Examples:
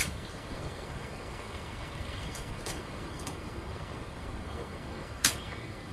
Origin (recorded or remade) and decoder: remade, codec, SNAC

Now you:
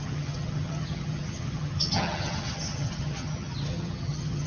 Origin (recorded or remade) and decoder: remade, vocoder, HiFi-GAN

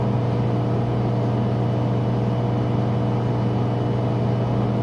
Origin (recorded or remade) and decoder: recorded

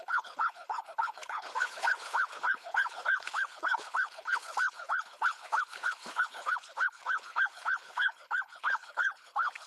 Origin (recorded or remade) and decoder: remade, codec, HILCodec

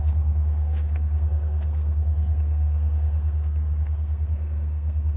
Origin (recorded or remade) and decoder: remade, codec, SNAC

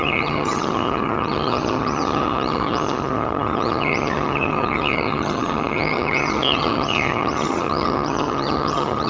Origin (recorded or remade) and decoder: remade, vocoder, HiFi-GAN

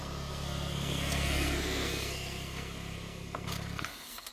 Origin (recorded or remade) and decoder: remade, codec, SNAC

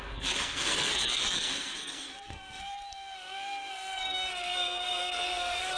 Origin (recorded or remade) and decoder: remade, codec, SNAC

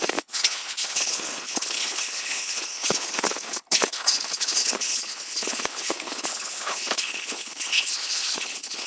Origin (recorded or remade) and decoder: remade, codec, HILCodec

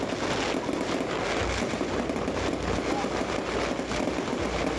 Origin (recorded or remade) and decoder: recorded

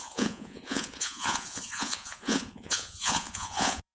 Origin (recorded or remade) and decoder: remade, vocoder, Vocos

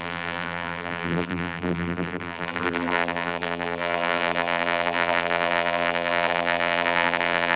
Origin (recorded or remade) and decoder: remade, vocoder, BigVGAN v2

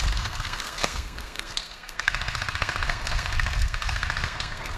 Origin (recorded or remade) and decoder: remade, codec, SNAC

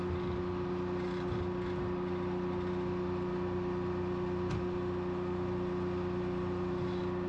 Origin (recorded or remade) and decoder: recorded